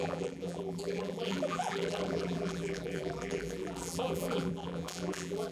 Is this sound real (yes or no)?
no